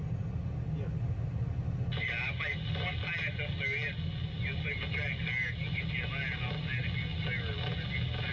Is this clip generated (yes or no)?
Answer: no